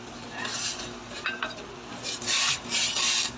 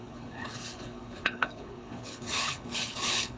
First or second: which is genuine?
first